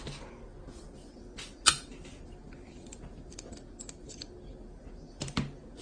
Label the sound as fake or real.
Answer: real